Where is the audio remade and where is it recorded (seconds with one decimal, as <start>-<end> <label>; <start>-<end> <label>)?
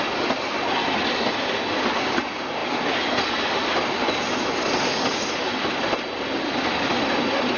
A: 0.0-7.6 recorded